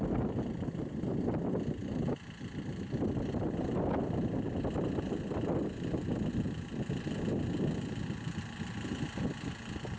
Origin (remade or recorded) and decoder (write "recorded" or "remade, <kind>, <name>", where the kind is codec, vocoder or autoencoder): recorded